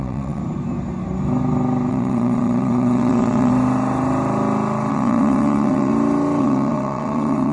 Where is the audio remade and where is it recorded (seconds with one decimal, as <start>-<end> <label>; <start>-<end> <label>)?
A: 0.0-0.4 remade; 0.4-1.9 recorded; 1.9-3.5 remade; 3.5-4.9 recorded; 4.9-5.9 remade; 5.9-6.4 recorded; 6.4-7.5 remade